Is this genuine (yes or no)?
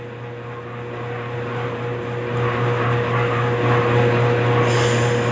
yes